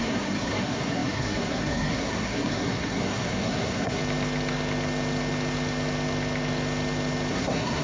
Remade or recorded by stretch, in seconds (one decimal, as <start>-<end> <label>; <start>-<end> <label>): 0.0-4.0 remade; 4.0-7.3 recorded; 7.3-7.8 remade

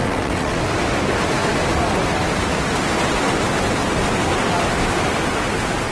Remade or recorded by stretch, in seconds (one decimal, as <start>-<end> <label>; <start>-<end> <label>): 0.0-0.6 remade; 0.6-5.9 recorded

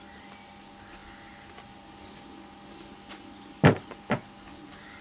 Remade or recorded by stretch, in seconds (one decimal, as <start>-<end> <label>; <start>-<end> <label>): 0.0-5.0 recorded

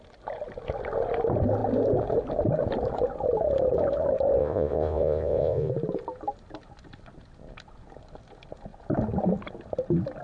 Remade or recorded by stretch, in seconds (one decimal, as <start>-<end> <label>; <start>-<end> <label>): 0.0-4.4 recorded; 4.4-5.7 remade; 5.7-10.2 recorded